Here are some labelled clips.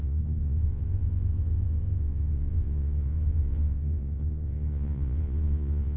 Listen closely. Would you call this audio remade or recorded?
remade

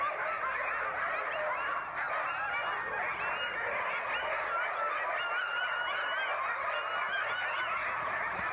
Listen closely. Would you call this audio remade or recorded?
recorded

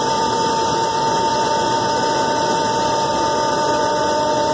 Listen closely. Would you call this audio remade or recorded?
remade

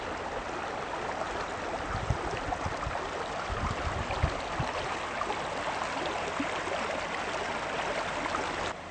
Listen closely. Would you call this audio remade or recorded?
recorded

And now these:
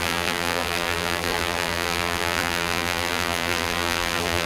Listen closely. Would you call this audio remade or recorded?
remade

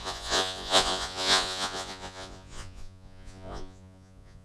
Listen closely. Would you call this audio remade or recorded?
remade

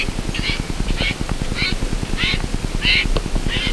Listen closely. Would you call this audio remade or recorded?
recorded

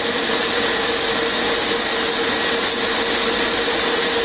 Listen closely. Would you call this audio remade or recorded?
recorded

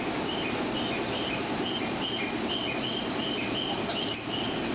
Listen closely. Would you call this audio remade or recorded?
recorded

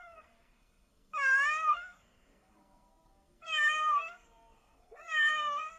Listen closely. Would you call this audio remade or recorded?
remade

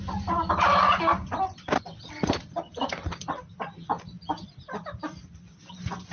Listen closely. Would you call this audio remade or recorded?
recorded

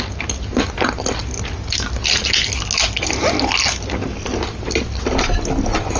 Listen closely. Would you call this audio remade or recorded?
recorded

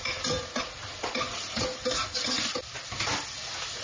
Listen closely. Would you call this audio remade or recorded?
recorded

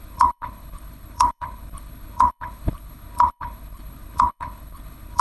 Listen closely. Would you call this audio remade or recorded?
remade